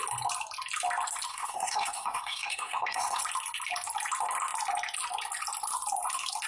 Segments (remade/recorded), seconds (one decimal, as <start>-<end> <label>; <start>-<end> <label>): 0.0-1.3 recorded; 1.3-3.2 remade; 3.2-6.5 recorded